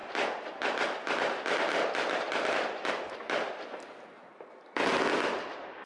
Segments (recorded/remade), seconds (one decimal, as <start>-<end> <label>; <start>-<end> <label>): 0.0-5.9 recorded

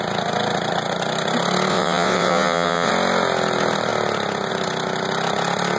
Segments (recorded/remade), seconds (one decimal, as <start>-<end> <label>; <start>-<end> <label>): 0.0-1.7 recorded; 1.7-2.9 remade; 2.9-5.8 recorded

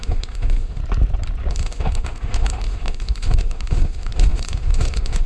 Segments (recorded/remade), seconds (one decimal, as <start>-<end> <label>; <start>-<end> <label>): 0.0-0.8 remade; 0.8-1.5 recorded; 1.5-5.3 remade